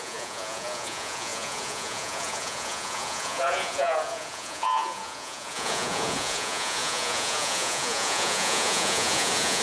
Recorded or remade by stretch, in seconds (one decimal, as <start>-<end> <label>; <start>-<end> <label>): 0.0-9.6 remade